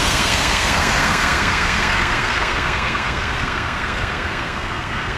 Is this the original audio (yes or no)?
no